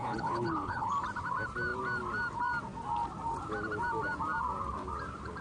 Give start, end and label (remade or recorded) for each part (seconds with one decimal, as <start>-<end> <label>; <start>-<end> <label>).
0.0-0.9 remade; 0.9-5.4 recorded